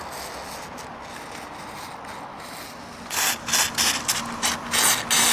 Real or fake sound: real